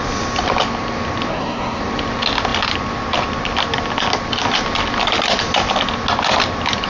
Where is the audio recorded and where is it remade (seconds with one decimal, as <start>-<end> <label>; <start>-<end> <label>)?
0.0-1.3 recorded; 1.3-1.8 remade; 1.8-6.9 recorded